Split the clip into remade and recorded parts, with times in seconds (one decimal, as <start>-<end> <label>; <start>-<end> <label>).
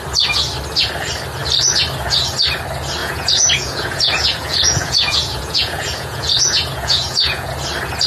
0.0-3.0 recorded; 3.0-7.5 remade; 7.5-8.1 recorded